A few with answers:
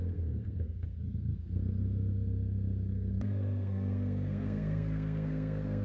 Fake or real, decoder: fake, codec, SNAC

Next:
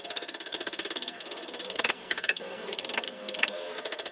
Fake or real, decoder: fake, codec, SNAC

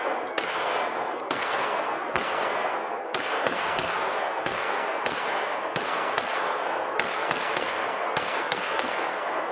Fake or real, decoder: fake, codec, SNAC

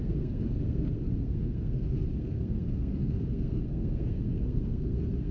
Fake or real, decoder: fake, codec, SNAC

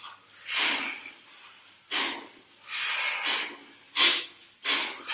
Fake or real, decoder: real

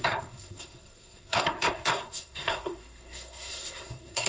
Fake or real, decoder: fake, codec, SNAC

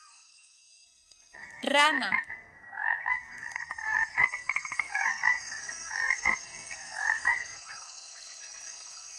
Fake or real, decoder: fake, codec, SNAC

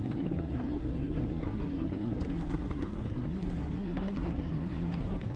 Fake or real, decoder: fake, codec, SNAC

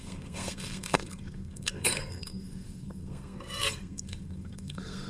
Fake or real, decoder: fake, codec, SNAC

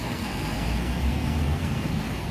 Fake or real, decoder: fake, codec, SNAC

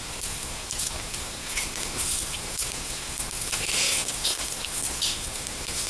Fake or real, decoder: fake, codec, SNAC